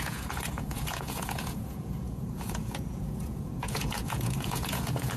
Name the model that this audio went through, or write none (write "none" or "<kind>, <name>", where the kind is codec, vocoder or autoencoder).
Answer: vocoder, Vocos